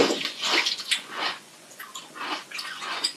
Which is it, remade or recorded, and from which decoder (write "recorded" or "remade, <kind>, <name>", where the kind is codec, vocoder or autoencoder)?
remade, vocoder, Vocos